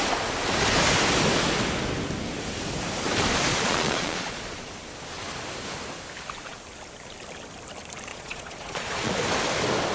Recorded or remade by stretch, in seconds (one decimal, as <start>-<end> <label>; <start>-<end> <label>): 0.0-3.5 recorded; 3.5-4.7 remade; 4.7-8.1 recorded; 8.1-9.1 remade; 9.1-9.9 recorded